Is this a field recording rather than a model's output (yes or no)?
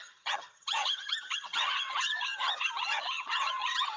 no